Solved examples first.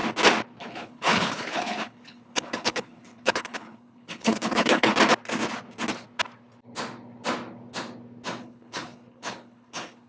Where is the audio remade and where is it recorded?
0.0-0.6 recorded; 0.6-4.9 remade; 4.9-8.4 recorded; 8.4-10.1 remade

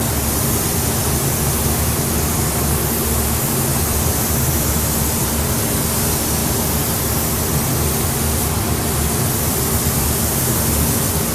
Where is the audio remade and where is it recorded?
0.0-3.7 recorded; 3.7-4.6 remade; 4.6-6.4 recorded; 6.4-10.7 remade; 10.7-11.3 recorded